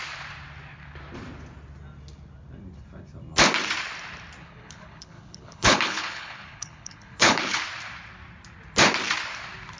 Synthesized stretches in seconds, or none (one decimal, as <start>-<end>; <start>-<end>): 4.4-7.6